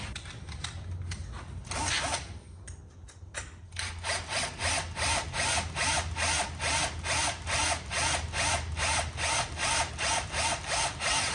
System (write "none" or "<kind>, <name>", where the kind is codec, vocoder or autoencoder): none